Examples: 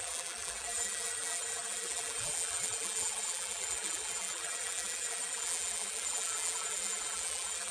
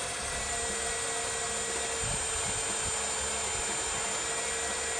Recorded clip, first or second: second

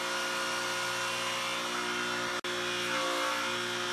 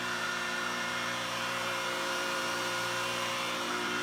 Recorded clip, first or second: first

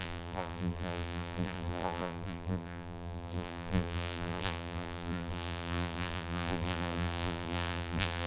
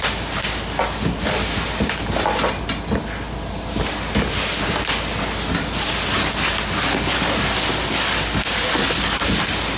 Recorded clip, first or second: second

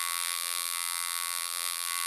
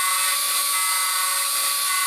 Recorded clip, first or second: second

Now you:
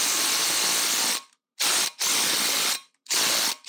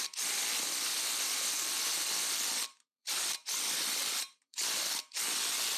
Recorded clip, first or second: first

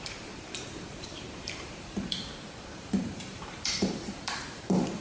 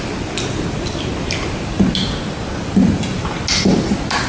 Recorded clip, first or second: second